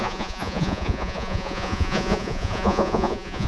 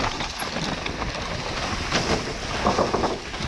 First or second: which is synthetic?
first